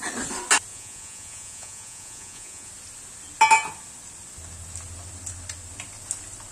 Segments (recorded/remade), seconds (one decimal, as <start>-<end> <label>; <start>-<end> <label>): 0.0-0.7 recorded; 0.7-2.7 remade; 2.7-6.5 recorded